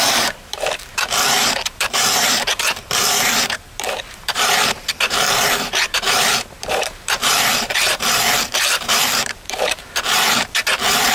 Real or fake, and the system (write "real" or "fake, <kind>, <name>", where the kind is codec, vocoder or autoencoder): fake, vocoder, BigVGAN v2